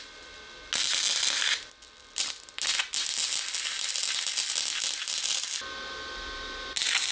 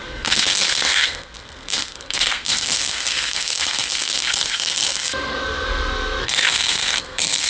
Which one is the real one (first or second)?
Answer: first